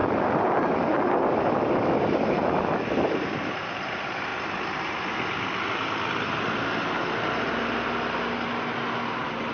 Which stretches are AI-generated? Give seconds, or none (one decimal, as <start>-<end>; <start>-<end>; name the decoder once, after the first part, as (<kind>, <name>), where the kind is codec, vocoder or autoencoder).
none